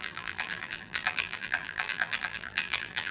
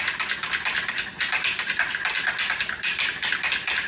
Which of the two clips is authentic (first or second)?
second